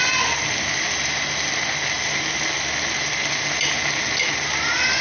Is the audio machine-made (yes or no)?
no